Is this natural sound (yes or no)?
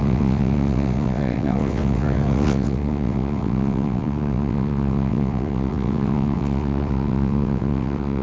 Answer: no